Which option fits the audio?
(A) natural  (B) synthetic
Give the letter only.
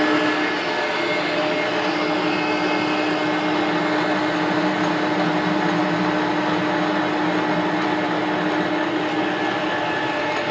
A